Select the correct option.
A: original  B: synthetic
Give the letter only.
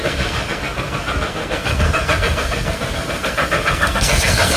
B